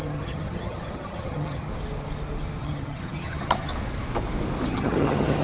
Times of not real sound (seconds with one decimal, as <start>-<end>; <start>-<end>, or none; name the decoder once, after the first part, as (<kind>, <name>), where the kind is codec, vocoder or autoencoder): 0.0-1.7 (vocoder, HiFi-GAN); 2.6-3.7; 4.7-5.4